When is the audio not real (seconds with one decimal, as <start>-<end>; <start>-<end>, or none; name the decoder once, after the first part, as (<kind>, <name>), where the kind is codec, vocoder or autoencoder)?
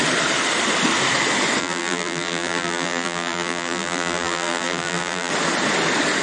1.6-5.3 (vocoder, BigVGAN v2)